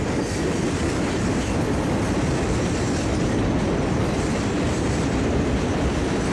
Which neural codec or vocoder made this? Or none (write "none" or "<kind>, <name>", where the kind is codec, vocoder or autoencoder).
none